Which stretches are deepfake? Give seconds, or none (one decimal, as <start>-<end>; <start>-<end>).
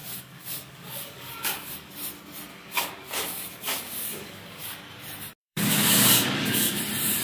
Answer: 0.0-1.9; 2.5-4.8; 5.4-6.8